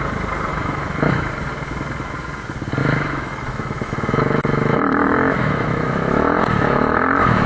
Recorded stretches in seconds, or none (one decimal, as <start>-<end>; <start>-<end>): 0.0-0.5; 1.3-2.8